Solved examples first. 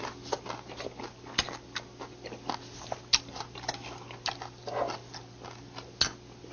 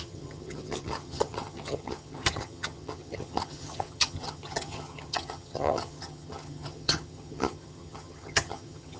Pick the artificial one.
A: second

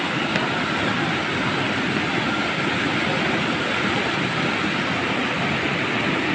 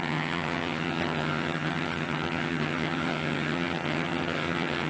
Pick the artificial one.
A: second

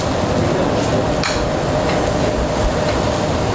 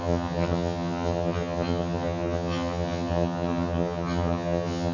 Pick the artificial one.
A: second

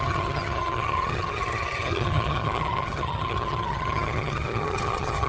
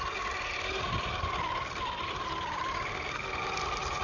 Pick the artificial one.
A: first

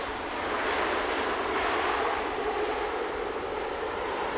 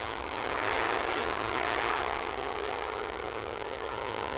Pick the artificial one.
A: second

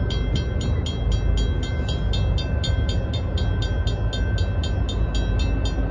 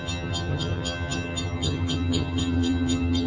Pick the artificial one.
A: second